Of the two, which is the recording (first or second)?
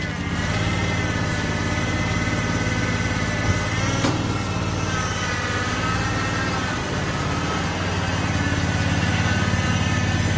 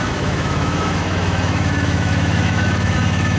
first